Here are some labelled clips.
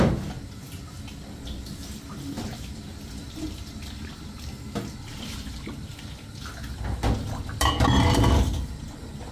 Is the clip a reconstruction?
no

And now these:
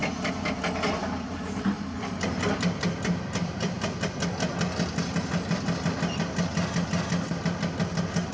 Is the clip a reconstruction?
no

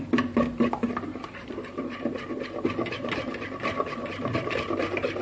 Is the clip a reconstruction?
no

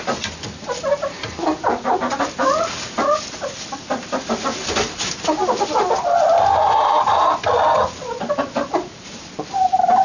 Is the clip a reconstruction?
no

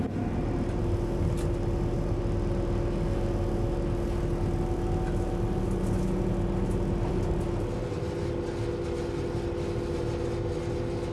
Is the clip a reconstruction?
no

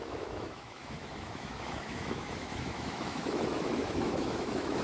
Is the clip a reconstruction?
yes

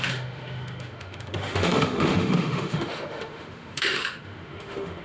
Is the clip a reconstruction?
yes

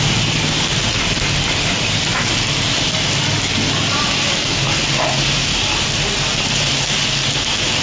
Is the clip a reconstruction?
no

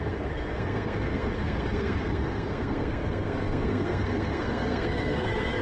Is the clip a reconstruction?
yes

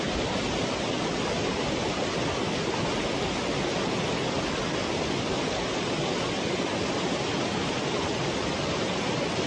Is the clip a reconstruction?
no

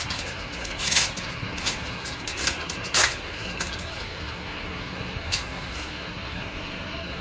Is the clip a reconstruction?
yes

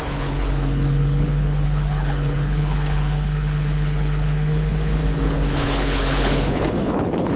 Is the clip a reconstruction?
yes